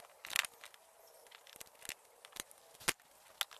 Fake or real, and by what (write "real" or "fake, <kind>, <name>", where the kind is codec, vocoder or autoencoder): real